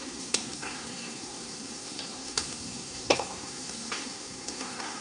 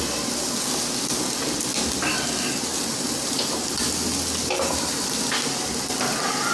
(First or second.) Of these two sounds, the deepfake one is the first